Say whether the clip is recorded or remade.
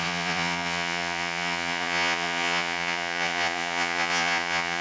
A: remade